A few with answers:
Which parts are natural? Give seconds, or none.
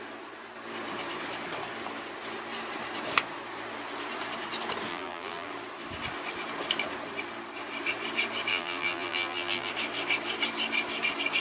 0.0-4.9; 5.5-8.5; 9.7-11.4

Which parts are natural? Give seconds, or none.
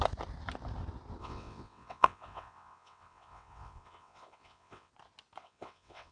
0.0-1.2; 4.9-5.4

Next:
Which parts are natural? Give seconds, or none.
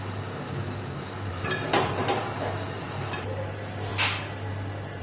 0.0-1.3; 2.2-5.0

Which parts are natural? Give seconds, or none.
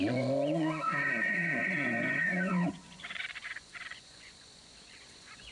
none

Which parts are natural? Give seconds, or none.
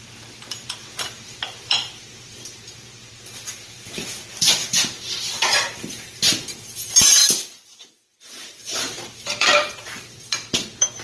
7.2-8.2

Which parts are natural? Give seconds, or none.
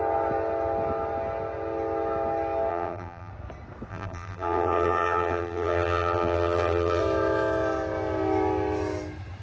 0.0-2.7; 3.3-3.9; 7.0-9.4